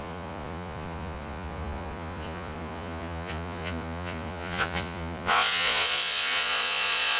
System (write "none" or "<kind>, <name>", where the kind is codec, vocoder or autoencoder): vocoder, Vocos